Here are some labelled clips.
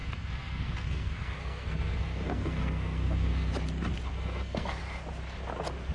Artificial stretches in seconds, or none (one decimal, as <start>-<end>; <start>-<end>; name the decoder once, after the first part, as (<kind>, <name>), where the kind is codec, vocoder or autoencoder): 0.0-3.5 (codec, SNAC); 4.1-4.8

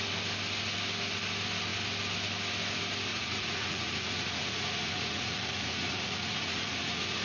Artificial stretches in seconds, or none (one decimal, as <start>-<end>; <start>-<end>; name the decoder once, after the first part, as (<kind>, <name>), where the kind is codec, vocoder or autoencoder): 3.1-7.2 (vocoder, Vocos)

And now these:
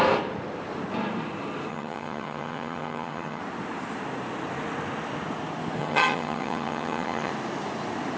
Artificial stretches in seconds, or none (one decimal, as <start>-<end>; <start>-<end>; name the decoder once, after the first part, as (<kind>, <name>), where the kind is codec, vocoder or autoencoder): 1.7-3.4 (vocoder, HiFi-GAN); 5.8-7.3

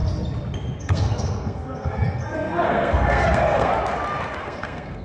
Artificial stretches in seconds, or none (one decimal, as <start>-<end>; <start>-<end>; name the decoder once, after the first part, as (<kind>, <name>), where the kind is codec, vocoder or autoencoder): 0.8-3.7 (codec, SNAC); 4.4-5.0

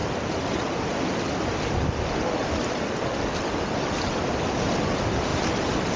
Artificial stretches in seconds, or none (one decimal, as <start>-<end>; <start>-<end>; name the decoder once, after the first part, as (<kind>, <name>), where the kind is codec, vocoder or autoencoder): 0.0-5.3 (vocoder, BigVGAN v2)

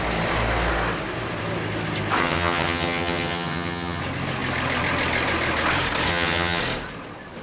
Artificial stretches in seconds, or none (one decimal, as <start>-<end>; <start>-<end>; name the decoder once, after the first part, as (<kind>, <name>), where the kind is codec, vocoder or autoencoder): 2.2-4.0 (vocoder, HiFi-GAN); 6.1-6.6